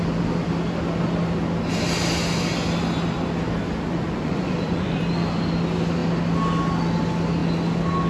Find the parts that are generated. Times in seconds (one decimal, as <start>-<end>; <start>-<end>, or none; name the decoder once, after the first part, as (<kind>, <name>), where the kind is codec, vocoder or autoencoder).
3.9-5.0 (vocoder, Vocos)